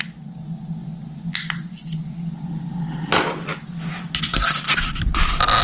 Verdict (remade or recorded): recorded